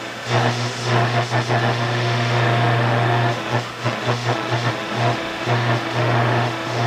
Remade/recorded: remade